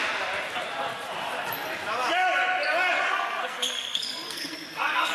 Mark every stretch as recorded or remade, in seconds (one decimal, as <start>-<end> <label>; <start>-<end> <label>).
0.0-3.1 recorded; 3.1-5.1 remade